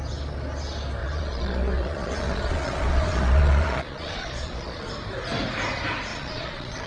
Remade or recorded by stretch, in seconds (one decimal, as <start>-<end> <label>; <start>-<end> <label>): 0.0-1.0 recorded; 1.0-4.9 remade; 4.9-6.1 recorded; 6.1-6.9 remade